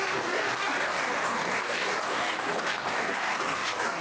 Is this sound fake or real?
fake